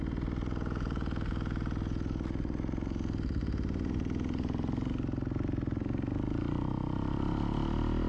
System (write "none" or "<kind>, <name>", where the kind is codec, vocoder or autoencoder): none